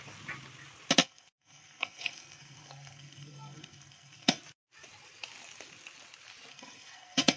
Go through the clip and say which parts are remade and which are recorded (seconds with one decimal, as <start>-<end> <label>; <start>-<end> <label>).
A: 0.0-1.0 recorded; 1.0-4.4 remade; 4.4-6.5 recorded; 6.5-7.4 remade